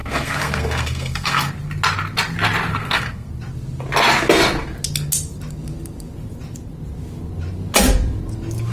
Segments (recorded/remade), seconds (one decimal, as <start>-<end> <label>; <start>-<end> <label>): 0.0-1.5 remade; 1.5-2.7 recorded; 2.7-3.3 remade; 3.3-8.7 recorded